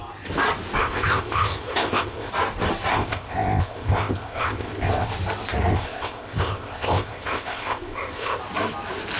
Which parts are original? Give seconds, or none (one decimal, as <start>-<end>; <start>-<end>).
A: 0.0-0.8; 2.3-2.9; 5.1-5.7; 8.4-9.2